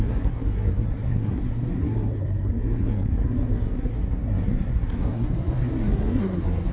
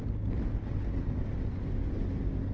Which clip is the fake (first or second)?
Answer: first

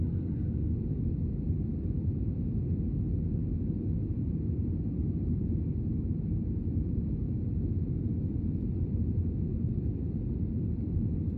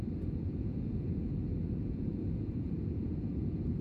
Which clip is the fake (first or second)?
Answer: second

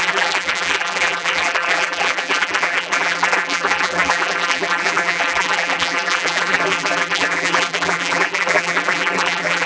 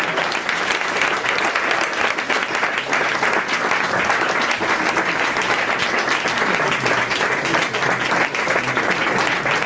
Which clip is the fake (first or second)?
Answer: first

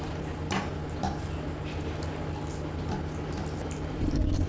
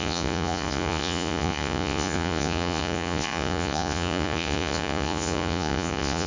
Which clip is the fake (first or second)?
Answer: second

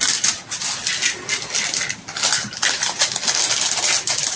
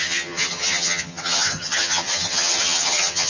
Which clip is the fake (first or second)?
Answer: second